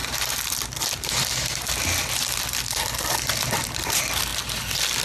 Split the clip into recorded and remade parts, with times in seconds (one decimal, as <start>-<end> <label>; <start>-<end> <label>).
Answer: 0.0-3.0 recorded; 3.0-4.3 remade; 4.3-5.0 recorded